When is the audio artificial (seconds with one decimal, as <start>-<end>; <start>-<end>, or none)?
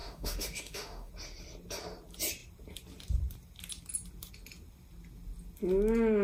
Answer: 0.0-1.1